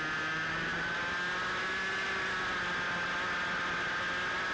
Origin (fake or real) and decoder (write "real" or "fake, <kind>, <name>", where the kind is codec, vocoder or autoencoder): real